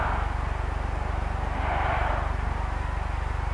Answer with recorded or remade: recorded